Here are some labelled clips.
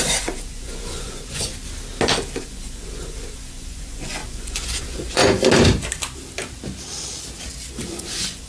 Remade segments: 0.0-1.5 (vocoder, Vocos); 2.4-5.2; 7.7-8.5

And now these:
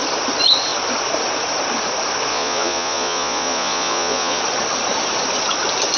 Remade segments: 2.3-4.4 (vocoder, Vocos)

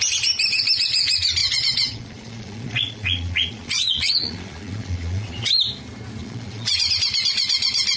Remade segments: 1.4-5.5 (vocoder, Vocos); 6.2-6.7